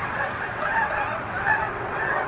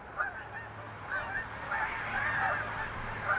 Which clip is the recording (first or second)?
second